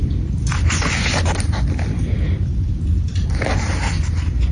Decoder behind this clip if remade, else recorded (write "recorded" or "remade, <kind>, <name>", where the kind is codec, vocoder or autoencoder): recorded